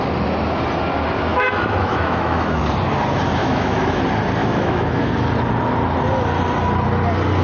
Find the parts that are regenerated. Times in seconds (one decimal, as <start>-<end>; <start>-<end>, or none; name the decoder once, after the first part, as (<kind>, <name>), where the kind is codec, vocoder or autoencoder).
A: 1.3-2.6 (autoencoder, DAC-VAE); 3.4-4.0; 4.4-5.1